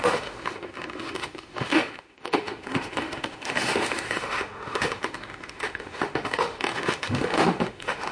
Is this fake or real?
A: fake